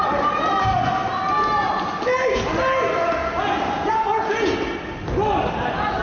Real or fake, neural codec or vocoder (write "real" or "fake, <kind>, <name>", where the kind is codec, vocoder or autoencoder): real